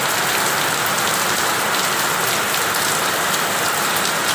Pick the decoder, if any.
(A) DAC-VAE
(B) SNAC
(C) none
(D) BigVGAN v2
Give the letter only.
C